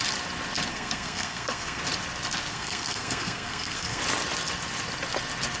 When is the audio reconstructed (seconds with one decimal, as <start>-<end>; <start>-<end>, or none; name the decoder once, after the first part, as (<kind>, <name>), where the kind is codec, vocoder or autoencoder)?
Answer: 0.7-1.8 (codec, SNAC); 2.5-4.0